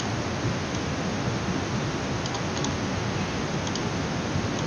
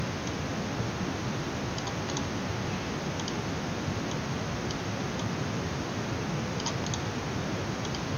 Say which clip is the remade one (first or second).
first